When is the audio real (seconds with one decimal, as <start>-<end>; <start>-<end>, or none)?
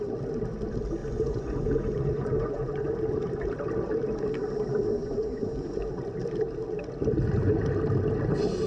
0.0-1.0; 2.9-5.0; 5.8-8.7